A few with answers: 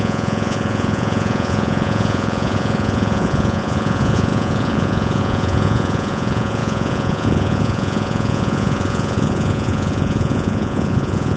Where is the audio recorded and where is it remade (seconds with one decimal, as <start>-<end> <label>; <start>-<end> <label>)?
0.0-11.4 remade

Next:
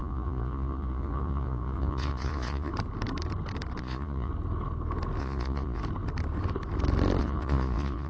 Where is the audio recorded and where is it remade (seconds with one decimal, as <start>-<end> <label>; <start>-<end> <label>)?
0.0-2.7 remade; 2.7-3.8 recorded; 3.8-4.3 remade; 4.3-5.2 recorded; 5.2-5.8 remade; 5.8-7.2 recorded; 7.2-8.1 remade

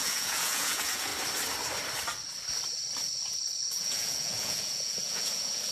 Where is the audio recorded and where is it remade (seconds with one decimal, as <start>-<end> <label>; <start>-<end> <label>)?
0.0-1.1 remade; 1.1-3.6 recorded; 3.6-5.7 remade

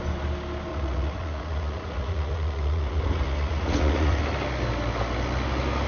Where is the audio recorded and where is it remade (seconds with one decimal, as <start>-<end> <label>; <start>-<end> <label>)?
0.0-0.7 recorded; 0.7-4.2 remade; 4.2-5.9 recorded

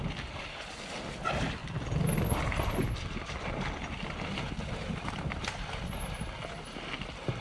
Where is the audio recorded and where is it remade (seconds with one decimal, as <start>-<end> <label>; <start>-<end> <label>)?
0.0-7.4 recorded